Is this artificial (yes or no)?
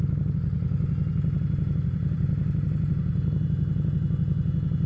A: no